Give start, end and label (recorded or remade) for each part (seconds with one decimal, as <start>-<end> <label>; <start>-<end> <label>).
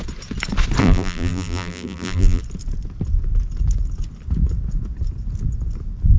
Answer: 0.0-0.8 recorded; 0.8-2.4 remade; 2.4-6.2 recorded